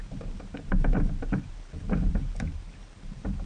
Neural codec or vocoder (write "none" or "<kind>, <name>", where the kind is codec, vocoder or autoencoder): vocoder, BigVGAN v2